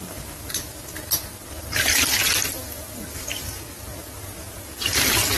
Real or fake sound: real